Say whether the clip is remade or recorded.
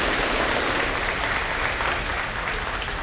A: recorded